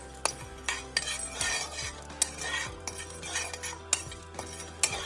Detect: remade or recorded recorded